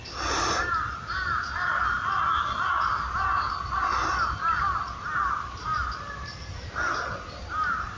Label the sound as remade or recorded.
recorded